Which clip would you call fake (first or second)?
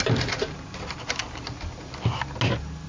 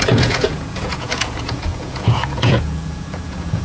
second